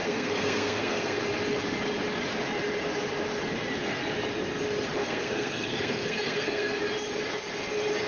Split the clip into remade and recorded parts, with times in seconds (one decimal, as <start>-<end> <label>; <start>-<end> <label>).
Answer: 0.0-1.2 remade; 1.2-5.0 recorded; 5.0-6.8 remade; 6.8-8.1 recorded